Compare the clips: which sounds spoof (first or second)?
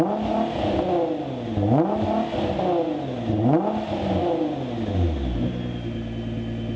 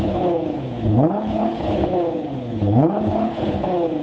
second